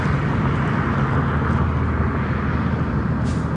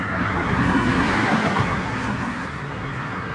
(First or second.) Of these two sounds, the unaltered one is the first